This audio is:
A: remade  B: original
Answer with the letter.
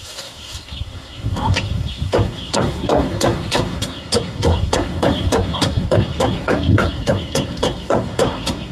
A